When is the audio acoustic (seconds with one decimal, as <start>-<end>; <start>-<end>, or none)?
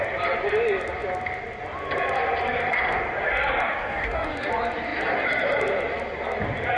0.0-3.5; 4.5-6.8